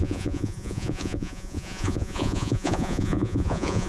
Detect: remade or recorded remade